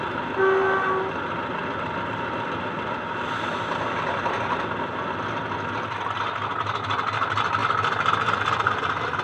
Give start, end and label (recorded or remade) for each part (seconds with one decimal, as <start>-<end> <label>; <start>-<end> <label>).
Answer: 0.0-9.2 recorded